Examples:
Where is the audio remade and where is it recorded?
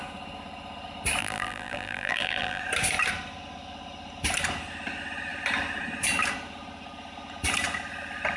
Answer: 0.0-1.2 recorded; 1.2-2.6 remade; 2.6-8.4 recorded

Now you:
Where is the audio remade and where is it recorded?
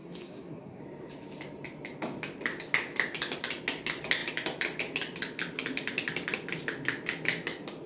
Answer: 0.0-0.8 remade; 0.8-7.9 recorded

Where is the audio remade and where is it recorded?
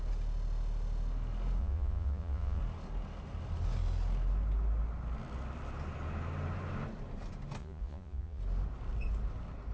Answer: 0.0-1.6 recorded; 1.6-2.6 remade; 2.6-7.6 recorded; 7.6-8.4 remade; 8.4-9.7 recorded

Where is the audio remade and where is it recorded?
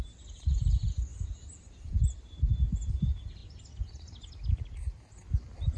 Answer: 0.0-5.8 recorded